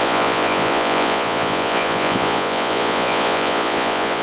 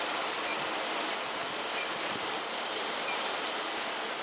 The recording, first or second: second